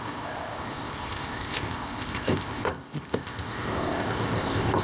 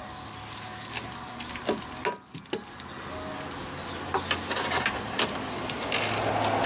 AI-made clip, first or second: first